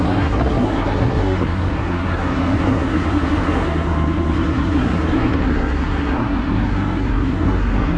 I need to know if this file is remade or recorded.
remade